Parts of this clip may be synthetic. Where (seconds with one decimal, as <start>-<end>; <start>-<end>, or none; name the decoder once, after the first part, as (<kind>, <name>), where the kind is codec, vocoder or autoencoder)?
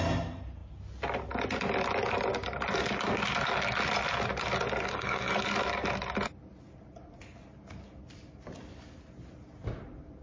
4.9-5.4 (codec, SNAC)